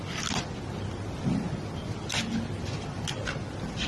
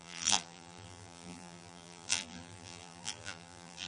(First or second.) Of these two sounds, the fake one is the second